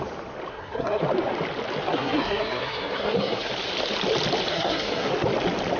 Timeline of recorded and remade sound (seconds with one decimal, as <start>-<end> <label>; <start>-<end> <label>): 0.0-0.5 recorded; 0.5-1.0 remade; 1.0-1.9 recorded; 1.9-3.5 remade; 3.5-4.5 recorded; 4.5-5.1 remade; 5.1-5.8 recorded